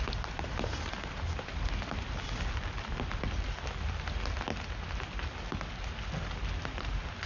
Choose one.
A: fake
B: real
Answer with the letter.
B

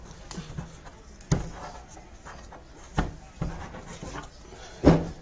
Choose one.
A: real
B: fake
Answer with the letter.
A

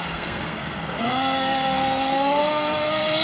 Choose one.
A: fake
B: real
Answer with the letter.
A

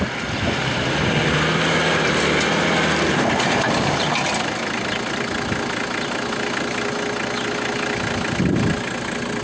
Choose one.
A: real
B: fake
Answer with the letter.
A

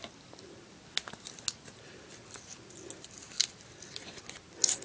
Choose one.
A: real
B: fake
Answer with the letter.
A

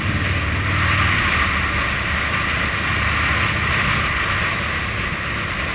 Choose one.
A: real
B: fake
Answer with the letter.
A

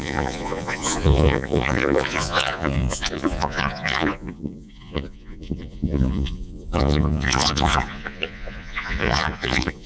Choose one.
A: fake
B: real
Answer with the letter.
A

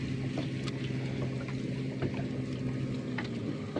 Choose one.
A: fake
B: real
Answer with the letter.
B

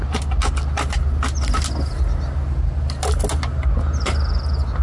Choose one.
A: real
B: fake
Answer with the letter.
A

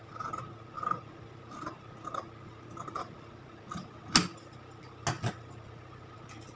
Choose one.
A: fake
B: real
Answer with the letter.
B